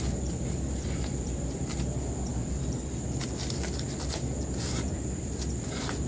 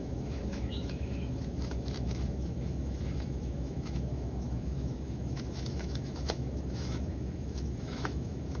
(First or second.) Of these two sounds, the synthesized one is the second